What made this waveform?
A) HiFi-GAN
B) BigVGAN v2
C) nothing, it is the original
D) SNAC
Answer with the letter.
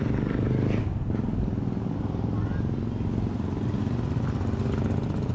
C